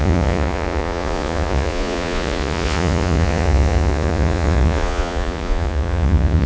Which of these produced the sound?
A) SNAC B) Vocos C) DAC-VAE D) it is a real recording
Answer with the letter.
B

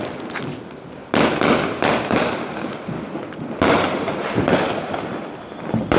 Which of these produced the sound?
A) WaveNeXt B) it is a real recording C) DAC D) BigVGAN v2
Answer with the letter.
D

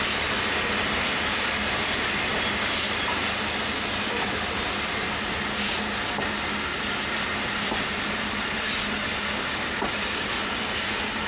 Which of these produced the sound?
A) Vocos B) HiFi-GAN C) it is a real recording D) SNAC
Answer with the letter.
C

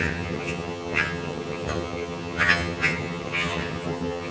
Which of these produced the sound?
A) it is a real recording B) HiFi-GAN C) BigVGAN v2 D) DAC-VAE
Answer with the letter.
B